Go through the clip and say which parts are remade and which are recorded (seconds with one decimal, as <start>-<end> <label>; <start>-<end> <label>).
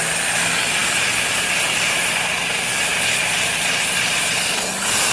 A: 0.0-0.8 recorded; 0.8-3.9 remade; 3.9-5.1 recorded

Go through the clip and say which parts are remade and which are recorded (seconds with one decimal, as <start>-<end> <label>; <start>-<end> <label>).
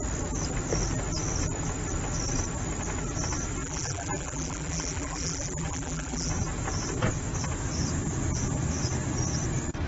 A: 0.0-3.6 recorded; 3.6-6.3 remade; 6.3-9.9 recorded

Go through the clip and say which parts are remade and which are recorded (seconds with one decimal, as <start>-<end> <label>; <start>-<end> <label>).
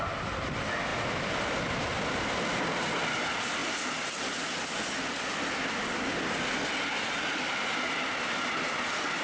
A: 0.0-9.2 recorded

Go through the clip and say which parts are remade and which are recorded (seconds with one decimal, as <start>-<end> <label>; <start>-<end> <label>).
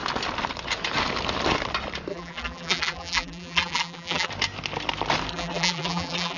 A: 0.0-2.1 recorded; 2.1-4.3 remade; 4.3-5.3 recorded; 5.3-6.4 remade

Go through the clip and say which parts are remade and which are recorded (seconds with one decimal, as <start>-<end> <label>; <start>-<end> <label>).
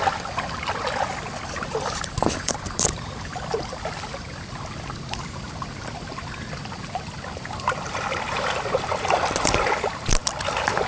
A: 0.0-10.9 remade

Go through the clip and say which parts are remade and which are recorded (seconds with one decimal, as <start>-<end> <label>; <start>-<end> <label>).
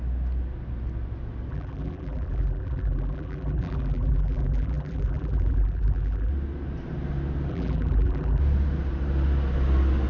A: 0.0-1.5 recorded; 1.5-6.3 remade; 6.3-7.5 recorded; 7.5-8.4 remade; 8.4-10.1 recorded